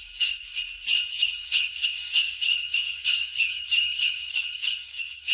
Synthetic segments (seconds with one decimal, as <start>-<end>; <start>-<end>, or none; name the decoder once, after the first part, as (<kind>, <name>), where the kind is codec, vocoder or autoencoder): 0.0-0.5 (codec, DAC); 1.1-5.3